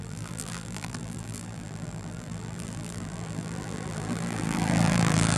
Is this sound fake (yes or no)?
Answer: yes